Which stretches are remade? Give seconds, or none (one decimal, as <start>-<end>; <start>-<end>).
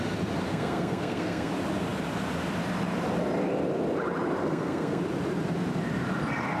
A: 0.5-1.5; 4.4-5.0